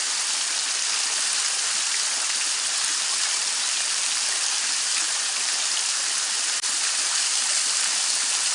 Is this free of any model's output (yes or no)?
yes